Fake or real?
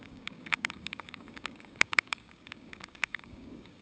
fake